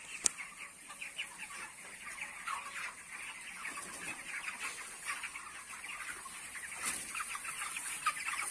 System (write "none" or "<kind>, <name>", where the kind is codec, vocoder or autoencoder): none